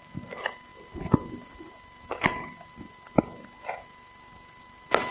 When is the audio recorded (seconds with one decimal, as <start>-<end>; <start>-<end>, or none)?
0.0-5.1